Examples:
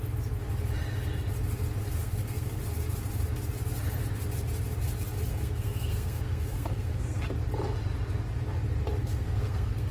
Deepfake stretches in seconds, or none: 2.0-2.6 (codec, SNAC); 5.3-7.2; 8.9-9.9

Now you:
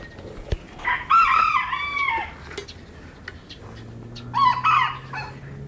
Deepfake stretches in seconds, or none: none

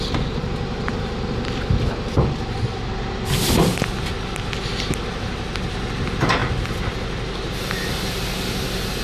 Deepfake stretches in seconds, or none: none

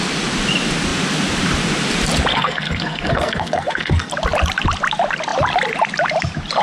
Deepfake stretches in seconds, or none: 2.3-4.1 (codec, SNAC)